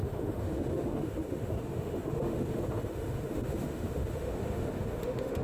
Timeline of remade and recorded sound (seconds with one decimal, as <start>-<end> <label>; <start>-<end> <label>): 0.0-5.4 remade